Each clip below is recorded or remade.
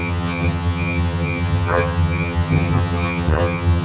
remade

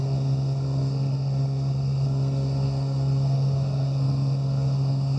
remade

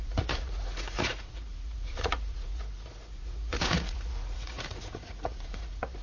remade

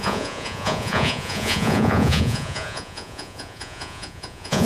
remade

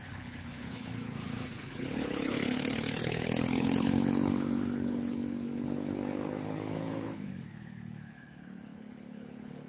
remade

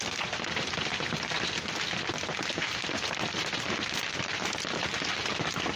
recorded